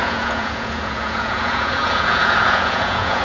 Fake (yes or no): yes